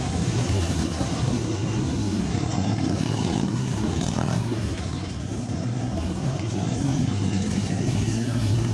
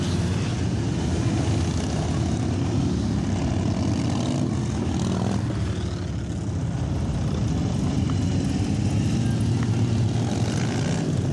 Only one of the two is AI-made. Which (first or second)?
first